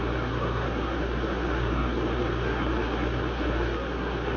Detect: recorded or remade remade